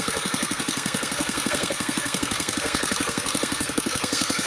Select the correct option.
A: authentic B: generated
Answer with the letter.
B